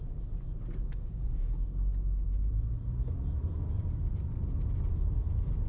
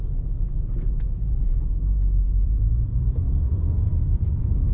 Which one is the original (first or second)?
first